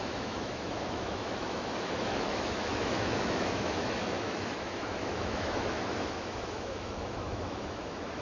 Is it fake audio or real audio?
fake